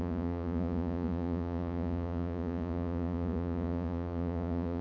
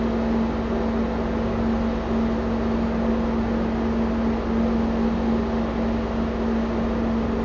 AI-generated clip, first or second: first